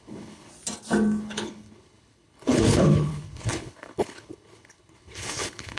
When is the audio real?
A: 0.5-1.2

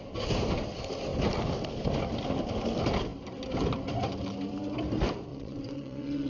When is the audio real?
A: 0.0-5.3

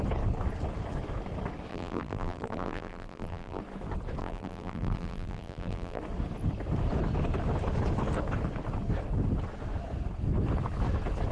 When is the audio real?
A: 0.0-1.7; 3.6-4.2; 6.0-11.3

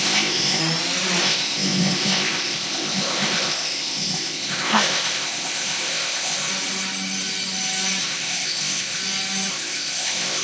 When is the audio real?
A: 0.6-1.2; 6.5-8.0; 9.0-9.5

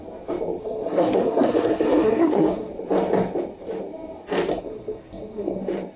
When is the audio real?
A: 0.0-0.6; 2.7-4.5; 5.6-6.0

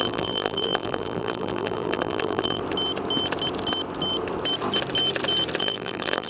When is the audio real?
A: 2.6-5.6

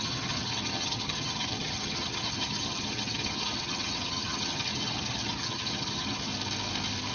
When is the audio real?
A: 6.3-7.1